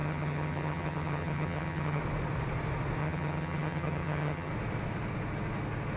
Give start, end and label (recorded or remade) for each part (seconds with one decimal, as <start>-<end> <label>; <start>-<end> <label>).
0.0-2.0 remade; 2.0-3.0 recorded; 3.0-4.5 remade; 4.5-6.0 recorded